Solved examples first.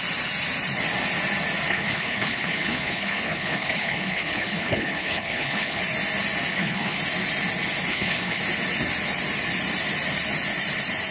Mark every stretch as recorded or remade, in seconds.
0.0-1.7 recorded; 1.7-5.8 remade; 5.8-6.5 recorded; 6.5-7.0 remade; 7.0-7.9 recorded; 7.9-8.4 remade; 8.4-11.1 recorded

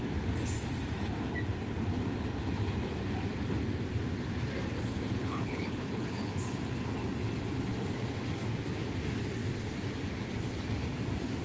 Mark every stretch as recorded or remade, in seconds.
0.0-5.2 recorded; 5.2-6.4 remade; 6.4-11.4 recorded

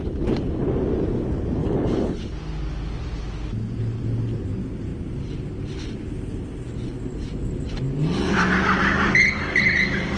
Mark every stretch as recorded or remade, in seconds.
0.0-1.6 recorded; 1.6-2.2 remade; 2.2-10.2 recorded

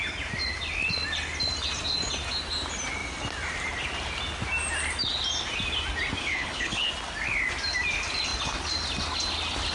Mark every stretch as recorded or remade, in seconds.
0.0-6.2 recorded; 6.2-6.9 remade; 6.9-9.7 recorded